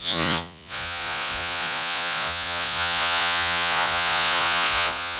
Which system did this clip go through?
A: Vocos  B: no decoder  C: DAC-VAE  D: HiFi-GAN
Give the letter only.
A